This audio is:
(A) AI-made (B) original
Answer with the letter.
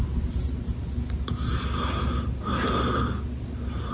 B